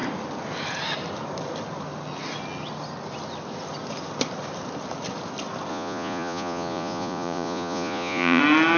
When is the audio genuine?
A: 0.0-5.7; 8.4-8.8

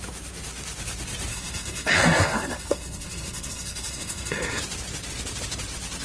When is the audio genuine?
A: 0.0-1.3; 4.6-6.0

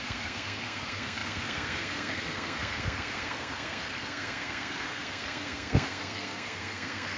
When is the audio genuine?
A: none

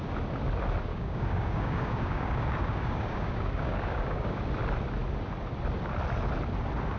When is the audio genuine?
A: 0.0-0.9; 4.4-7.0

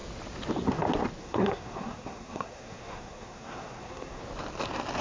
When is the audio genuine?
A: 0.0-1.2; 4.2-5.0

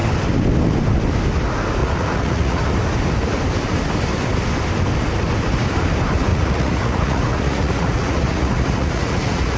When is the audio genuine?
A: 0.0-1.8; 2.6-6.3